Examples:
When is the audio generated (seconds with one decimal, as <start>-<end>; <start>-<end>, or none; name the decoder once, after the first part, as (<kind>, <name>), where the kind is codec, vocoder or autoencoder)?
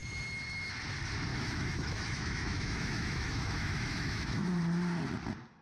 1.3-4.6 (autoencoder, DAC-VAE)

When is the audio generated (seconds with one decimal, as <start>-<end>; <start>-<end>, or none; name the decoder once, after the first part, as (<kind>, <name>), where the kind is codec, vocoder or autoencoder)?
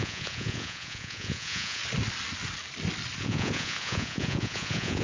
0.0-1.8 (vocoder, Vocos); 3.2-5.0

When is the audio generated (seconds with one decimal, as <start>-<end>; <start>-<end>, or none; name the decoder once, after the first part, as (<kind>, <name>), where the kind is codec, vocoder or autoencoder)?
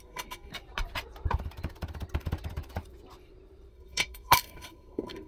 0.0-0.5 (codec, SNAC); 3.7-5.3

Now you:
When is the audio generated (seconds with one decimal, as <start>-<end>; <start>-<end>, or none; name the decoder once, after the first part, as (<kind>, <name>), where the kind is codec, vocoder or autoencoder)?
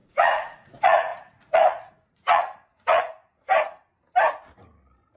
0.0-3.2 (vocoder, Vocos)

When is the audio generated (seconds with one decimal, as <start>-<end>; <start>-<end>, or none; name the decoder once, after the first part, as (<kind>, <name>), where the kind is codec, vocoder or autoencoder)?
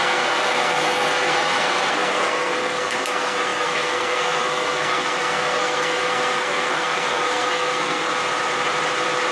0.0-8.1 (codec, SNAC)